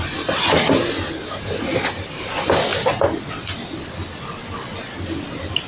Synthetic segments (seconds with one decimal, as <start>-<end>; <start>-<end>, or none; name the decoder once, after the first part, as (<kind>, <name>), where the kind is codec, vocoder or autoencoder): 1.7-2.3 (vocoder, BigVGAN v2); 2.7-3.2